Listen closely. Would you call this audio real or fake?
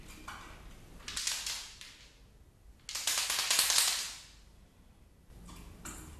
real